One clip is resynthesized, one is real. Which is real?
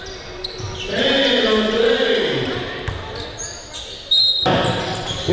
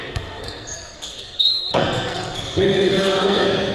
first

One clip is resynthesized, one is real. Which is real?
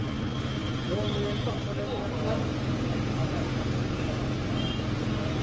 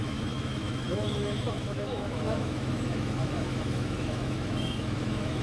first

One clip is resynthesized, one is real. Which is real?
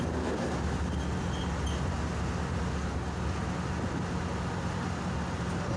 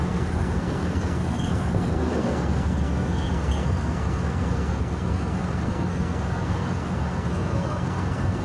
first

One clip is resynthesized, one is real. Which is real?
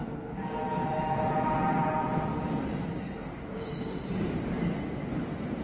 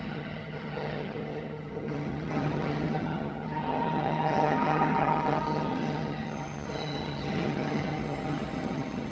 first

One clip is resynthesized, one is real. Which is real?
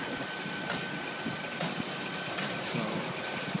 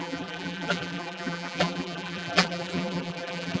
first